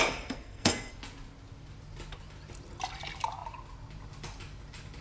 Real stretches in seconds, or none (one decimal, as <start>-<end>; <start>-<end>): 0.9-5.0